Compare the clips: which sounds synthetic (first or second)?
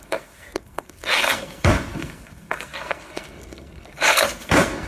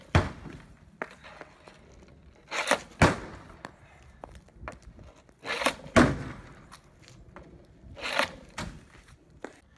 first